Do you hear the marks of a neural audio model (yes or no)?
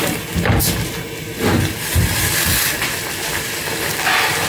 no